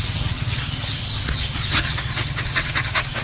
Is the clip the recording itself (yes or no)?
no